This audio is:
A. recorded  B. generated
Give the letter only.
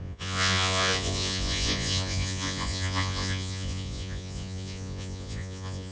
B